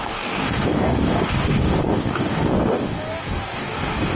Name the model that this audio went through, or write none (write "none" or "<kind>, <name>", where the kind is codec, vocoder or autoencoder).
codec, DAC